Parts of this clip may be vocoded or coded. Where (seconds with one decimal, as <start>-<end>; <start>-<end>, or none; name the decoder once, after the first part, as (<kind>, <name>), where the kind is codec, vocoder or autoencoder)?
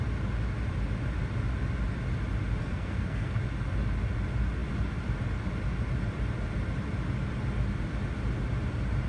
2.6-3.4 (codec, SNAC)